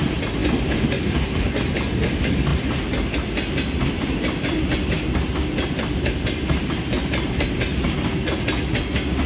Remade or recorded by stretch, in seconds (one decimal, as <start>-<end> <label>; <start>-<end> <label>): 0.0-9.3 recorded